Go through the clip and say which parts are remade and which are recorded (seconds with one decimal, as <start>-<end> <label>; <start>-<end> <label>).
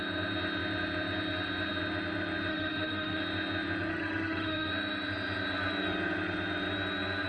0.0-2.5 recorded; 2.5-3.2 remade; 3.2-3.9 recorded; 3.9-4.7 remade; 4.7-7.3 recorded